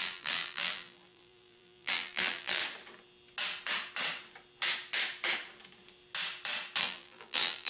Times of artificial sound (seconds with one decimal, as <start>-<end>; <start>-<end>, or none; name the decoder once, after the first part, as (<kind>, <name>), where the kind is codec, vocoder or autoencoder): 0.0-2.6 (vocoder, BigVGAN v2); 6.8-7.7